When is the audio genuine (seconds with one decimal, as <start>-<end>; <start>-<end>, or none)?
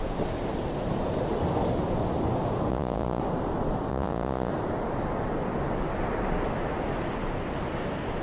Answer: 0.0-2.7; 3.2-3.9; 4.5-8.2